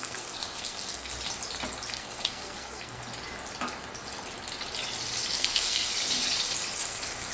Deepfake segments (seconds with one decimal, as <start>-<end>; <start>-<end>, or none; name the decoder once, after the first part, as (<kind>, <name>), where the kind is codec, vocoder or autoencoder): 0.0-1.1 (codec, SNAC); 1.9-3.0; 5.3-5.9; 6.8-7.3

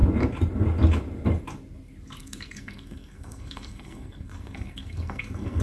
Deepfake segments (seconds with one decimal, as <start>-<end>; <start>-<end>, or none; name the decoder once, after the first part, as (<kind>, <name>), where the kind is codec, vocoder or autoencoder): 2.2-5.6 (codec, SNAC)

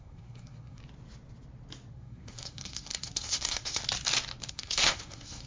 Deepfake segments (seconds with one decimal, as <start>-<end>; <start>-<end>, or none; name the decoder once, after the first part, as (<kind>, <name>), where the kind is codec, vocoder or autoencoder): 0.0-0.8 (codec, SNAC); 1.9-3.8; 4.5-5.5

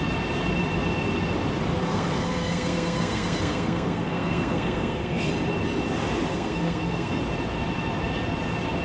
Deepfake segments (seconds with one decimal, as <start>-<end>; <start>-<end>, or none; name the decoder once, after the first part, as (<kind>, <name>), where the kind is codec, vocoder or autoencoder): 1.8-5.3 (codec, SNAC); 6.3-7.2

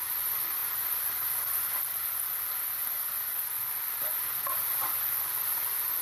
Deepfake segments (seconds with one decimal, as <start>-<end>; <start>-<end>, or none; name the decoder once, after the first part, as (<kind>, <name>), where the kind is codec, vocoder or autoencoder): none

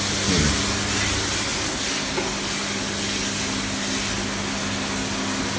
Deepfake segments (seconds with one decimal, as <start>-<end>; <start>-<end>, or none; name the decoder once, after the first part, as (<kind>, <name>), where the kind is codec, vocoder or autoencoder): none